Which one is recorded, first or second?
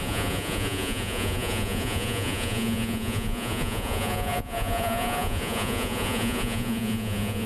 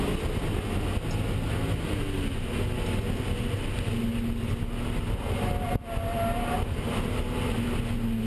second